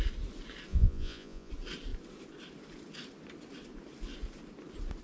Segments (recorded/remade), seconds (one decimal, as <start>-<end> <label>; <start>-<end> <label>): 0.0-0.7 recorded; 0.7-1.5 remade; 1.5-5.0 recorded